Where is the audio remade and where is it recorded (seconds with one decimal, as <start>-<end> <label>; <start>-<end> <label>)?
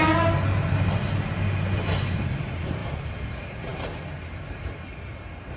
0.0-2.8 recorded; 2.8-3.3 remade; 3.3-5.6 recorded